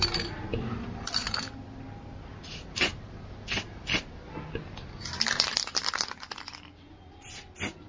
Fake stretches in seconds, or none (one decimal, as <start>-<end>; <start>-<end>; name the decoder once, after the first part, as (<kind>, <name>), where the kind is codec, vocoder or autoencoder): 0.5-1.5 (vocoder, BigVGAN v2)